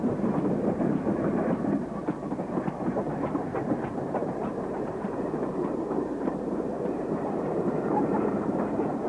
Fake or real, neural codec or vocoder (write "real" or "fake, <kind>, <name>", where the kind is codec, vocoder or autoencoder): fake, vocoder, BigVGAN v2